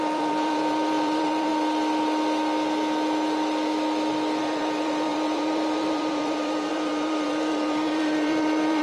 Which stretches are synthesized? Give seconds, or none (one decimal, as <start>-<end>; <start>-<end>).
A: 0.0-1.5; 4.4-8.8

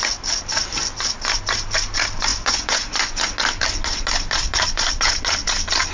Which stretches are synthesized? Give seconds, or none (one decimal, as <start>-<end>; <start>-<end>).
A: 2.3-3.2

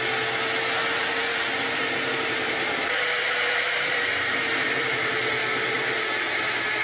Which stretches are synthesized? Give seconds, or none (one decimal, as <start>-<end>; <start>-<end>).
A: 1.0-5.1